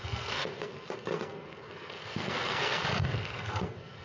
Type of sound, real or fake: fake